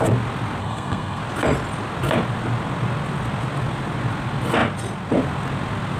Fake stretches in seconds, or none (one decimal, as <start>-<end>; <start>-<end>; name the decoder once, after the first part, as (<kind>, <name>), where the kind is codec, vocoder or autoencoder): 0.6-1.2 (codec, SNAC)